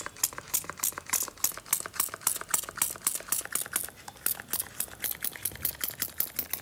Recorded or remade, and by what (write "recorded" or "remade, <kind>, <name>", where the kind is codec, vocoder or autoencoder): recorded